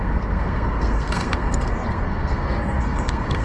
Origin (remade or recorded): remade